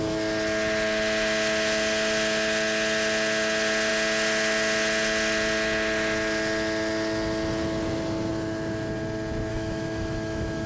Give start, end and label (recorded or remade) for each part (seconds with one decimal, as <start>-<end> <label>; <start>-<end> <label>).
0.0-9.5 recorded; 9.5-10.7 remade